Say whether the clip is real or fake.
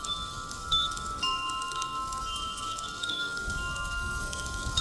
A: fake